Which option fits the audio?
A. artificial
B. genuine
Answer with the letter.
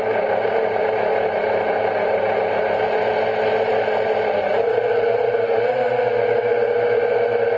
B